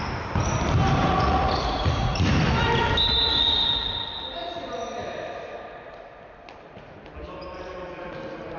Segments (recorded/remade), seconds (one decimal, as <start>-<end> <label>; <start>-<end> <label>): 0.0-1.0 recorded; 1.0-2.3 remade; 2.3-8.6 recorded